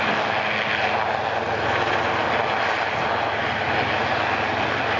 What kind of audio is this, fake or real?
real